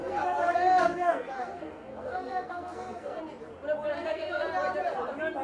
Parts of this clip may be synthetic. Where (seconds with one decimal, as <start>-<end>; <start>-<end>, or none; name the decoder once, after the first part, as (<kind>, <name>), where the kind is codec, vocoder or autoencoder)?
0.0-3.2 (codec, SNAC); 3.9-4.5